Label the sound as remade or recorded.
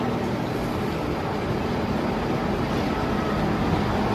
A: recorded